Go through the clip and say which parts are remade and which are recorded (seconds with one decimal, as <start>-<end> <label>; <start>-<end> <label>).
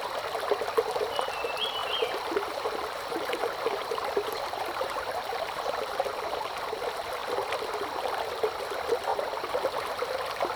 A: 0.0-1.8 recorded; 1.8-6.6 remade; 6.6-9.1 recorded; 9.1-10.0 remade; 10.0-10.6 recorded